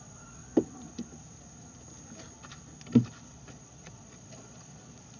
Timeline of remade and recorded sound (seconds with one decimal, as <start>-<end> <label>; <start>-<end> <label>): 0.0-0.4 remade; 0.4-3.3 recorded; 3.3-5.2 remade